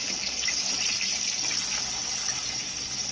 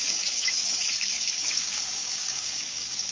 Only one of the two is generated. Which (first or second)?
second